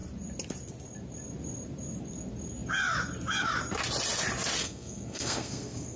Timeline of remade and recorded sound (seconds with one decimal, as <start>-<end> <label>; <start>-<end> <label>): 0.0-4.6 recorded; 4.6-6.0 remade